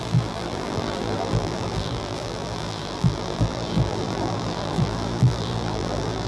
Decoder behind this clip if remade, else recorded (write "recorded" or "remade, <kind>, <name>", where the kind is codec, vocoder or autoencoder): remade, vocoder, BigVGAN v2